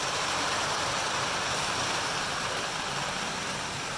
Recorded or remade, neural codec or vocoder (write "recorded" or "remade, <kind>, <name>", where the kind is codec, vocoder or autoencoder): recorded